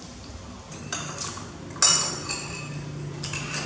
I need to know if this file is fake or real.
real